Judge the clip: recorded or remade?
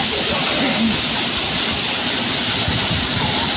recorded